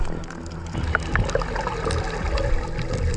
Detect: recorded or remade recorded